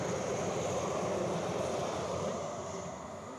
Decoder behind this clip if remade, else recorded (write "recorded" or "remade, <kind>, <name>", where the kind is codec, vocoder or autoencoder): recorded